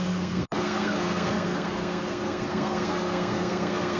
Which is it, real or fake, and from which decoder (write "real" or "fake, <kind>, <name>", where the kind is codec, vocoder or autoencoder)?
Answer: fake, codec, SNAC